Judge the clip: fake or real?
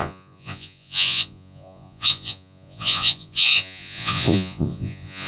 fake